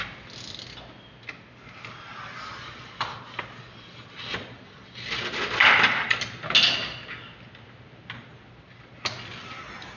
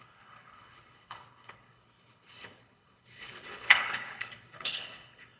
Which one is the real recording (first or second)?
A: first